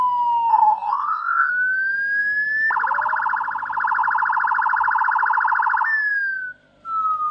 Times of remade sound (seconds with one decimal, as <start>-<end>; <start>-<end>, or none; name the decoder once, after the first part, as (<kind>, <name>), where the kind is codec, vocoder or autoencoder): 0.5-1.5 (codec, SNAC)